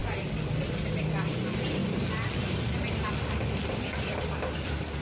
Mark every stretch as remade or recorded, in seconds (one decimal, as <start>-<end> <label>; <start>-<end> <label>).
0.0-5.0 remade